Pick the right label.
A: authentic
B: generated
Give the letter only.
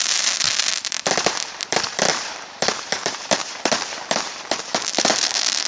B